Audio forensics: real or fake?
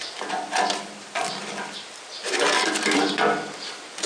fake